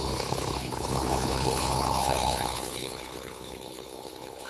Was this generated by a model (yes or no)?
yes